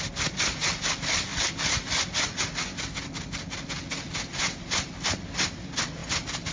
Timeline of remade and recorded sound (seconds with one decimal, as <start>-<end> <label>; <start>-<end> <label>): 0.0-6.5 recorded